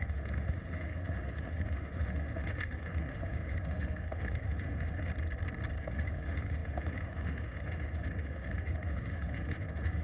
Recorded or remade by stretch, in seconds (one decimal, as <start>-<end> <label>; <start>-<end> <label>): 0.0-5.1 remade; 5.1-5.8 recorded; 5.8-10.0 remade